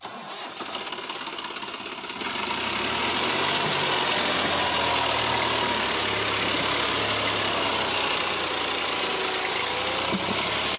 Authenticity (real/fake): real